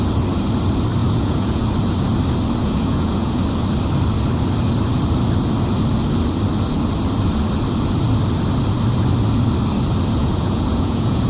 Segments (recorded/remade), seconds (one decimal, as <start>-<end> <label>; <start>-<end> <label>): 0.0-1.0 recorded; 1.0-1.6 remade; 1.6-2.6 recorded; 2.6-3.4 remade; 3.4-10.2 recorded; 10.2-11.3 remade